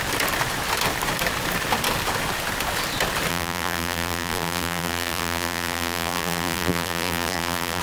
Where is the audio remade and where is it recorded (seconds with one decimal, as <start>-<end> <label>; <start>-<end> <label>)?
0.0-3.3 recorded; 3.3-7.8 remade